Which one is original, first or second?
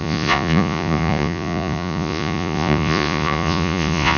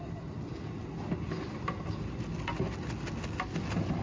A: second